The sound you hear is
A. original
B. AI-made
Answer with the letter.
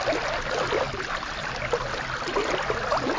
A